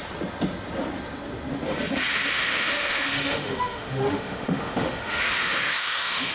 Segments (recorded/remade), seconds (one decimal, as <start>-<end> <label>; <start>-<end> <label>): 0.0-2.1 recorded; 2.1-6.3 remade

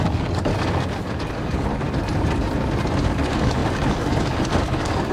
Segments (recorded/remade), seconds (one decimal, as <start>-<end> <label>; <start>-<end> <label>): 0.0-0.5 remade; 0.5-1.0 recorded; 1.0-1.7 remade; 1.7-3.1 recorded; 3.1-5.1 remade

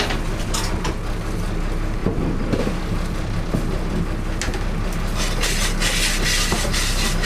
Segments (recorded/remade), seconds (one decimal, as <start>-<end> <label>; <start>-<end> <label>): 0.0-2.0 recorded; 2.0-4.0 remade; 4.0-7.3 recorded

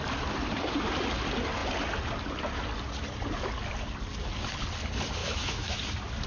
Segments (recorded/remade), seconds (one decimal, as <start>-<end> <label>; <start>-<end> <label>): 0.0-5.2 recorded; 5.2-5.8 remade; 5.8-6.3 recorded

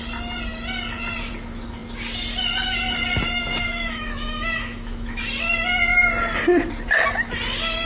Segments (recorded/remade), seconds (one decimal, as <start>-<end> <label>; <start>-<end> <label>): 0.0-3.4 recorded; 3.4-5.2 remade; 5.2-7.9 recorded

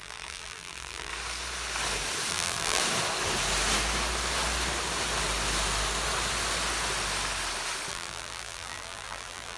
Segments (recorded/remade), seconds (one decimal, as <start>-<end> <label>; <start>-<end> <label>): 0.0-1.1 remade; 1.1-2.3 recorded; 2.3-2.8 remade; 2.8-7.9 recorded; 7.9-9.6 remade

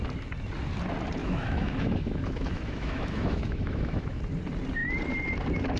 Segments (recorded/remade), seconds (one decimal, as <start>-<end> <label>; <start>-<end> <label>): 0.0-1.2 recorded; 1.2-4.2 remade; 4.2-5.8 recorded

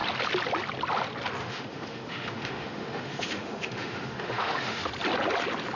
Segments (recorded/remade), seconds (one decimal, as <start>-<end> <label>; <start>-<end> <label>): 0.0-1.4 recorded; 1.4-4.9 remade; 4.9-5.8 recorded